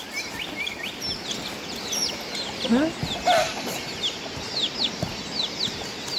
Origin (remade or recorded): recorded